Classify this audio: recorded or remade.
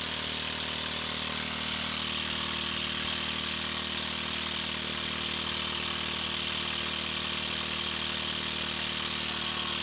recorded